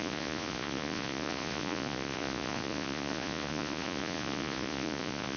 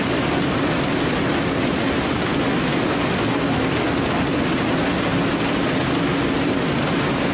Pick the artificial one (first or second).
first